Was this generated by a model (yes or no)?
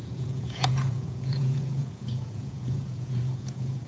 yes